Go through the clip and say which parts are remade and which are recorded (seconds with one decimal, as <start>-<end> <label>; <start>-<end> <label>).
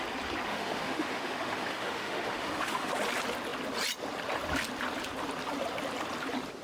0.0-0.5 recorded; 0.5-2.9 remade; 2.9-6.6 recorded